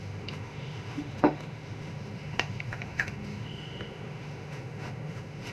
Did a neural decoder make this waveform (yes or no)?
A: yes